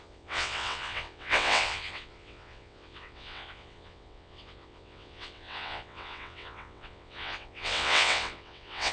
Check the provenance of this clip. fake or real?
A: fake